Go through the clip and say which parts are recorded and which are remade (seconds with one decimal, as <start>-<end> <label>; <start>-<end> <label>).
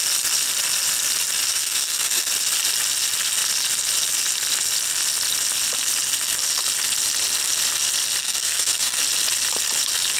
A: 0.0-1.5 recorded; 1.5-2.3 remade; 2.3-8.2 recorded; 8.2-9.0 remade; 9.0-10.2 recorded